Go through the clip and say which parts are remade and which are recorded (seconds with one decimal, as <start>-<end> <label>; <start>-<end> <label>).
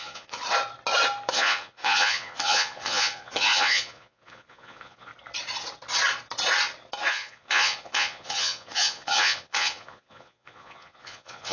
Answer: 0.0-0.4 remade; 0.4-1.3 recorded; 1.3-5.1 remade; 5.1-7.1 recorded; 7.1-11.5 remade